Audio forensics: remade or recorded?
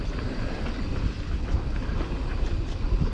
recorded